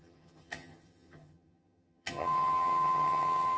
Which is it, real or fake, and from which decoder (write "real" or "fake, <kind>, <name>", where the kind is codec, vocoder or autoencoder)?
fake, vocoder, HiFi-GAN